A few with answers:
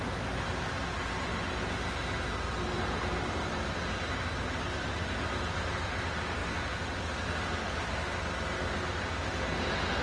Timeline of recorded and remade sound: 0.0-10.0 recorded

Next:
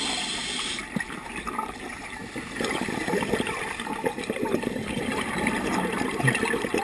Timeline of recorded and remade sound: 0.0-6.8 recorded

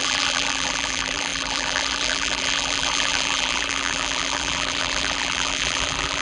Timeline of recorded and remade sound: 0.0-6.2 remade